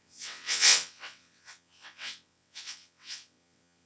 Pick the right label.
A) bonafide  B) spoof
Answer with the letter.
B